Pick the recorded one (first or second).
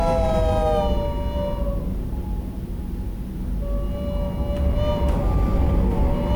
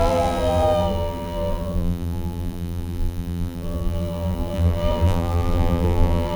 first